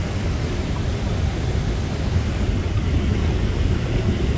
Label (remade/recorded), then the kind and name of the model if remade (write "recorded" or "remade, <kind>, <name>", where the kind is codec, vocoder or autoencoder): recorded